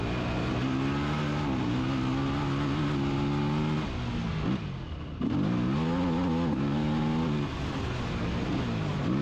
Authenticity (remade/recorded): recorded